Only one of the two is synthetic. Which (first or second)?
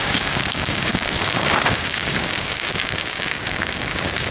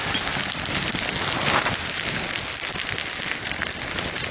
first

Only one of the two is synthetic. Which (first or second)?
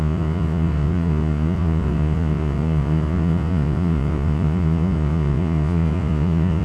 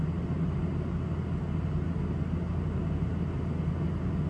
first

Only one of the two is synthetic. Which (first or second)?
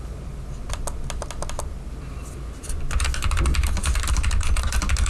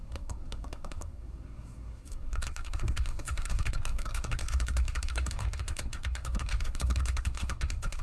second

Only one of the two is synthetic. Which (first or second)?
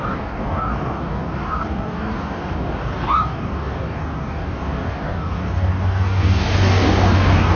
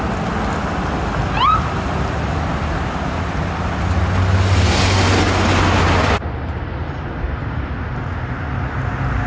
first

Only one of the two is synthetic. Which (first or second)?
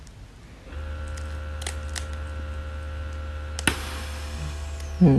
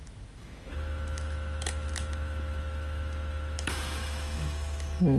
second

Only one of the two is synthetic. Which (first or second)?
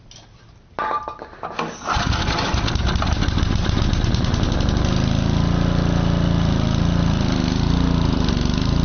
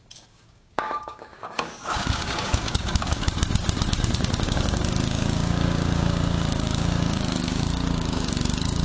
second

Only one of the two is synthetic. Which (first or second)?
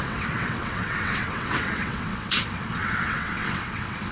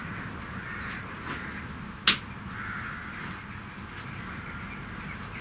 first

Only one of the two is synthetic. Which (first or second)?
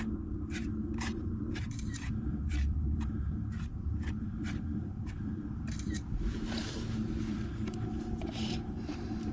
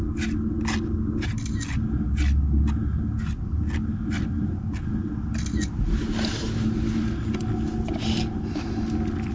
first